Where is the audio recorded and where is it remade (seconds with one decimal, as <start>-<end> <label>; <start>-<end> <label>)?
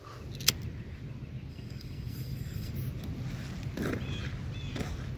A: 0.0-1.5 recorded; 1.5-2.7 remade; 2.7-5.2 recorded